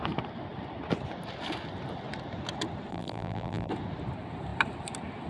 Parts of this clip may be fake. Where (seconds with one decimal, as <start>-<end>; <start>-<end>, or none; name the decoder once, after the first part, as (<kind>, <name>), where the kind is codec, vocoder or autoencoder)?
2.9-3.7 (vocoder, BigVGAN v2)